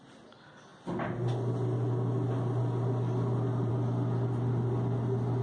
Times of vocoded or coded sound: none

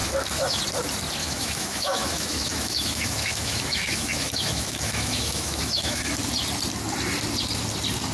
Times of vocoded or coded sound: 0.0-0.6; 1.2-6.1

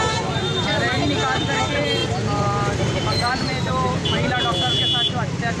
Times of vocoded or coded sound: none

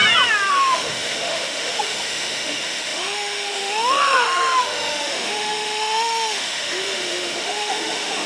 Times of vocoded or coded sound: 0.5-8.3

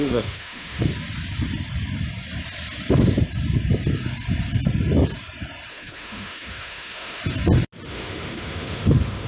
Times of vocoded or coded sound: 0.0-0.9; 5.7-7.2; 7.9-9.3

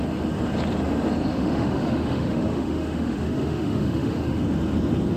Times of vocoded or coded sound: 1.3-4.4

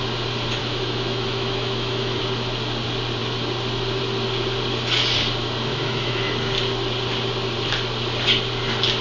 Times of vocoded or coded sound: 0.6-2.2; 5.7-6.2

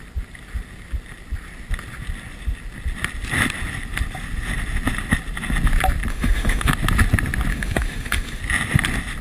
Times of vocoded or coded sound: 6.1-6.7; 7.5-8.4